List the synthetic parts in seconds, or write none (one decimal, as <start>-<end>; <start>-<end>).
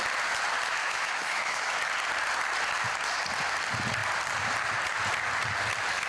0.8-1.8